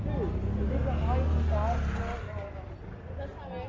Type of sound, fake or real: real